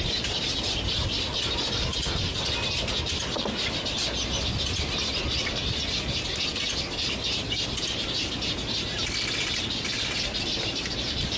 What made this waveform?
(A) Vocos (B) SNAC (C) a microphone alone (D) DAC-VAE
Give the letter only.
C